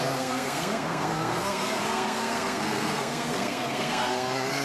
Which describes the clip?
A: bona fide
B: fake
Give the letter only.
B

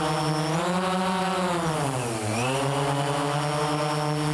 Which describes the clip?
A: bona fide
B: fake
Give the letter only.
A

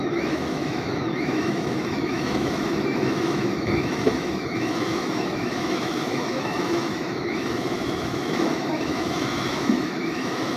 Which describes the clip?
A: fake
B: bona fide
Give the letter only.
A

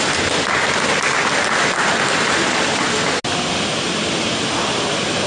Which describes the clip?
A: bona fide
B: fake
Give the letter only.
A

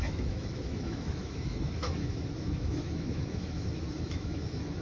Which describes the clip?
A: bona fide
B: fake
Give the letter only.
B